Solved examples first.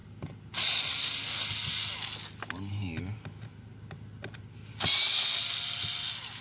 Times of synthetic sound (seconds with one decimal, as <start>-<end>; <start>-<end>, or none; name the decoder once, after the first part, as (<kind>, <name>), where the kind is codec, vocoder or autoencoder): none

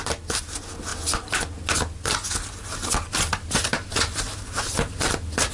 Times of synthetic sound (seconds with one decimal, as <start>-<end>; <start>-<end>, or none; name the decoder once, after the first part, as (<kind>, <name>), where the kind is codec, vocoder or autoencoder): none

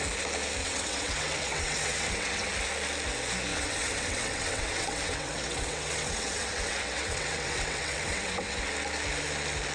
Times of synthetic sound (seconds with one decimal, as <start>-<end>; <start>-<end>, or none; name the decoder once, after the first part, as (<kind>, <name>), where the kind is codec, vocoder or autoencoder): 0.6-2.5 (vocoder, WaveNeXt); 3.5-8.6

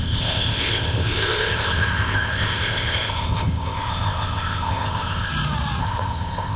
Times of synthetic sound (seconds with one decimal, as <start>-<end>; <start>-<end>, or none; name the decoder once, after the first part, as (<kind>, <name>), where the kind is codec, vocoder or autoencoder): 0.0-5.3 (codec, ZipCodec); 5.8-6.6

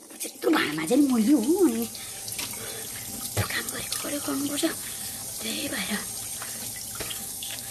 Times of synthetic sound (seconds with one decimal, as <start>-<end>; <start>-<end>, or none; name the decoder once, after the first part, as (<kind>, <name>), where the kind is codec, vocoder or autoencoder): 4.6-5.2 (codec, DAC); 7.1-7.7